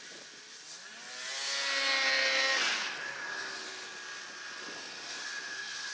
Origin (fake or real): real